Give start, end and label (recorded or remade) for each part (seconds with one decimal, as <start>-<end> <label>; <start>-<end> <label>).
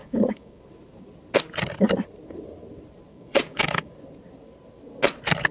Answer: 0.0-0.6 remade; 0.6-3.1 recorded; 3.1-3.9 remade; 3.9-5.5 recorded